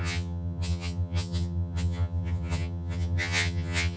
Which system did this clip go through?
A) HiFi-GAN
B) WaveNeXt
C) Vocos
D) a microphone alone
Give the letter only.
A